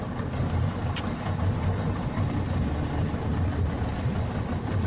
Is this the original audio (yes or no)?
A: yes